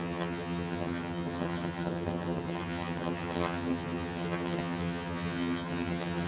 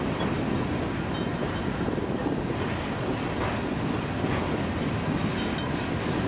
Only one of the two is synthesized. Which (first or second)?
first